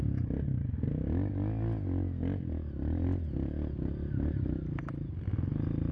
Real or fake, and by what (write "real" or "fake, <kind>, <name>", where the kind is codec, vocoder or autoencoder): real